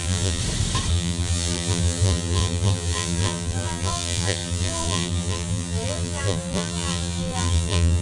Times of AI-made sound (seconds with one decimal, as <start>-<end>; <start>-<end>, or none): 0.0-0.4; 0.9-8.0

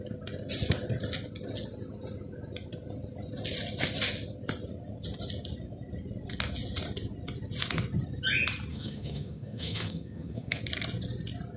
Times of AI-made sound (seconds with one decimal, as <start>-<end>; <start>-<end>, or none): 8.7-10.6

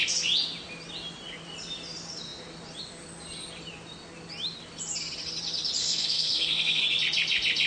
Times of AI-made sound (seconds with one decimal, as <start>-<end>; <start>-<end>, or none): 5.8-6.8

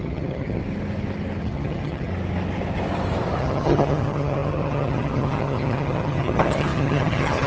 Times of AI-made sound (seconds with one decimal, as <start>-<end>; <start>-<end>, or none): 0.0-0.6; 1.4-2.1; 3.4-7.5

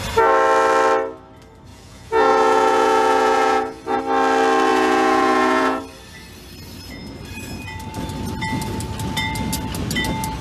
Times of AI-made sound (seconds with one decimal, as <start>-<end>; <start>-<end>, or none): 1.7-4.0; 4.7-5.8

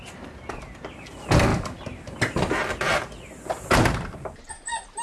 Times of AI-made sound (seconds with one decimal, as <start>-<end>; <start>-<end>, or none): none

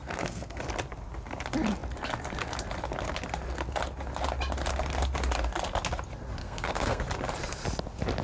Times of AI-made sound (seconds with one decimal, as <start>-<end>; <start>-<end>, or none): 0.0-0.6; 6.4-7.0